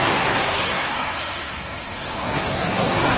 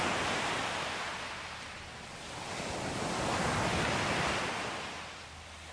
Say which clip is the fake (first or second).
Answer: first